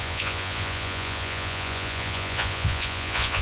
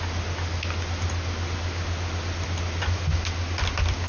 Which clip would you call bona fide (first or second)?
second